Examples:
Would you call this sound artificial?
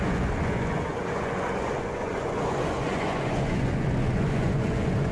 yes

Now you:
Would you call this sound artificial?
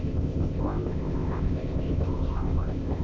yes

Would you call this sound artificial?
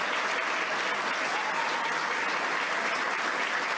no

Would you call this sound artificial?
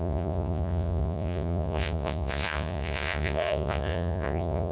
yes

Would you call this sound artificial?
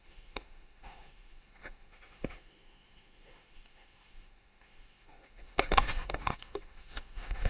yes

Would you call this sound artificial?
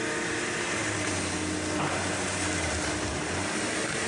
no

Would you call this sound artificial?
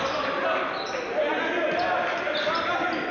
no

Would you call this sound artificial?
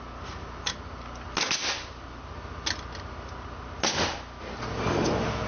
no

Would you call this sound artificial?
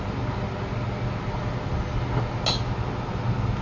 no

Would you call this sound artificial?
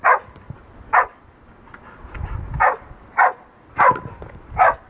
no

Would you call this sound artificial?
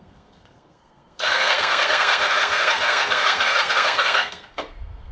yes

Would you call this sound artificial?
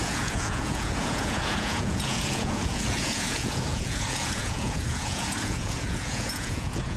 yes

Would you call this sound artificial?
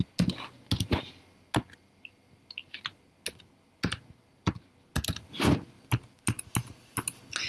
no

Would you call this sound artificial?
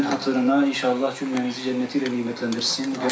no